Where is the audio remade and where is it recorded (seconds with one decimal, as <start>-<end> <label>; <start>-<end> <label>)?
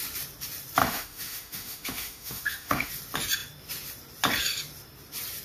0.0-0.8 recorded; 0.8-2.9 remade; 2.9-5.4 recorded